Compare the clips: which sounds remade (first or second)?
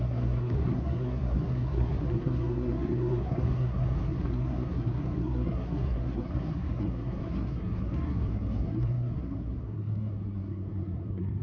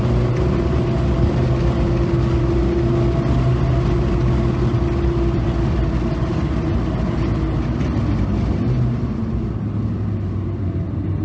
first